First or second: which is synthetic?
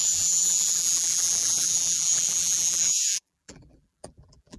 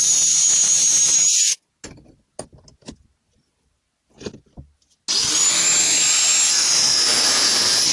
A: first